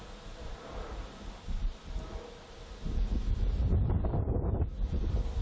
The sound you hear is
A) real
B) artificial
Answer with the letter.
A